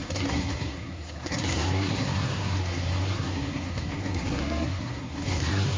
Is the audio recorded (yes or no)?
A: no